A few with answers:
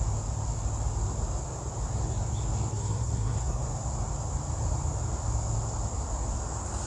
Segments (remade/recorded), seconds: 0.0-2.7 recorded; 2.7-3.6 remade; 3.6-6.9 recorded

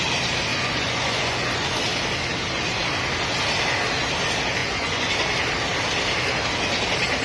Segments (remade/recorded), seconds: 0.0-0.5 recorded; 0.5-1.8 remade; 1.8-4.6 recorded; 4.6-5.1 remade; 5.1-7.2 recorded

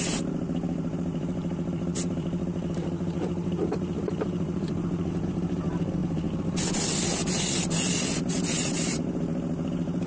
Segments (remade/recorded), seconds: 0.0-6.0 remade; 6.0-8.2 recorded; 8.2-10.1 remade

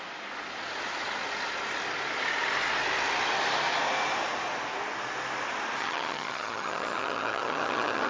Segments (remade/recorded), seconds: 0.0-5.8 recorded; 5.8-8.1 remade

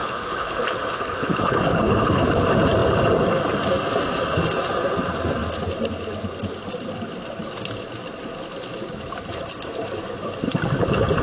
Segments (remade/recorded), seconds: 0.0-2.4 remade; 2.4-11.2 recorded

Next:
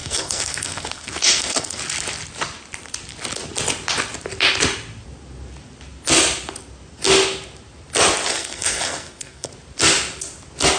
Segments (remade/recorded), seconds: 0.0-1.8 remade; 1.8-8.3 recorded; 8.3-9.5 remade; 9.5-10.8 recorded

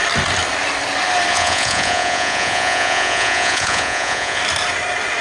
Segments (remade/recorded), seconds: 0.0-1.3 recorded; 1.3-4.4 remade; 4.4-5.2 recorded

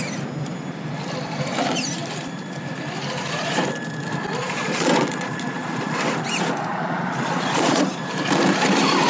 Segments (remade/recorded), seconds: 0.0-4.4 recorded; 4.4-5.9 remade; 5.9-6.7 recorded; 6.7-7.8 remade; 7.8-9.1 recorded